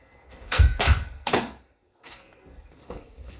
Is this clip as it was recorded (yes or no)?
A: no